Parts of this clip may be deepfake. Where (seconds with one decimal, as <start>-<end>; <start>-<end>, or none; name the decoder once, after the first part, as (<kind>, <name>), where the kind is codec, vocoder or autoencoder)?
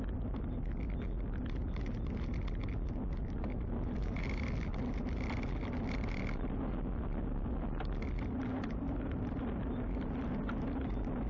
8.5-9.4 (vocoder, BigVGAN v2)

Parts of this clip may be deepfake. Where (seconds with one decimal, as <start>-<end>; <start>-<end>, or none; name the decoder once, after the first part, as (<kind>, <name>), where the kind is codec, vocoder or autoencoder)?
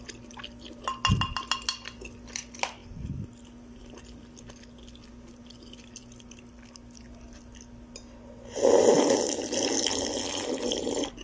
none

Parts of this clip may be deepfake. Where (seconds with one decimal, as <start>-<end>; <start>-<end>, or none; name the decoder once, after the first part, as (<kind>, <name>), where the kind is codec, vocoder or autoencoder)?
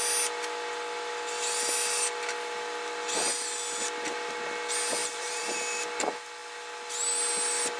5.0-5.5 (vocoder, BigVGAN v2)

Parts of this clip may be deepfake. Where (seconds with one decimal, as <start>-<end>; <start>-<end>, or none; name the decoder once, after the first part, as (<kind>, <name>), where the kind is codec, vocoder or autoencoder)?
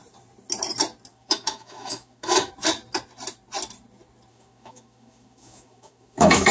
1.1-2.5 (autoencoder, DAC-VAE); 4.3-6.5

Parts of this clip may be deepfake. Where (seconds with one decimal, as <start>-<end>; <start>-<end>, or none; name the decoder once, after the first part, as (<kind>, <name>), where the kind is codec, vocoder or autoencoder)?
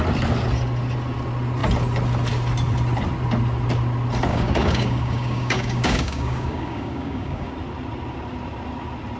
4.3-7.5 (codec, DAC)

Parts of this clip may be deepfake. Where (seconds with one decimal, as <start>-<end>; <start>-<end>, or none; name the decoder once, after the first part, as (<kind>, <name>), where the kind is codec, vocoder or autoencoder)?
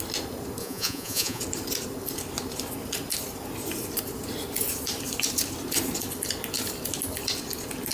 0.6-1.4 (vocoder, Vocos)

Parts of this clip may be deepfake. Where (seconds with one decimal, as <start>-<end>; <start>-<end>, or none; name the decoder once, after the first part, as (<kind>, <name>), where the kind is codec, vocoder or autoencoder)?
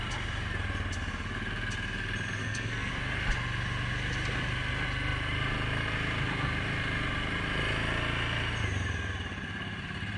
2.4-2.9 (codec, SNAC)